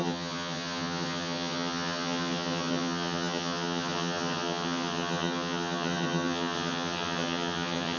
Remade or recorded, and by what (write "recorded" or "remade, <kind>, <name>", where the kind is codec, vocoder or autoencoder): remade, vocoder, HiFi-GAN